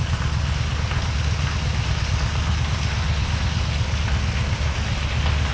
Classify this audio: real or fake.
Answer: real